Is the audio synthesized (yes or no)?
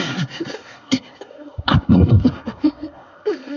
yes